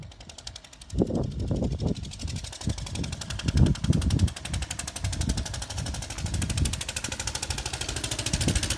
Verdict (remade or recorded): recorded